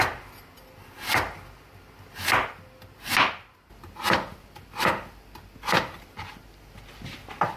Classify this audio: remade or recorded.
recorded